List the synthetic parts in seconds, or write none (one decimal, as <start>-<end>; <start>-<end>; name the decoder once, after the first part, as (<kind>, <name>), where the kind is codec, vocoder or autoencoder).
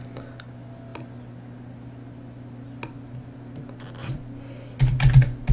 none